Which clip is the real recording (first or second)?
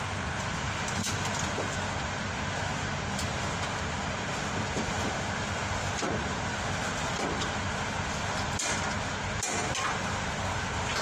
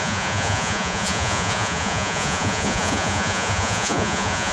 first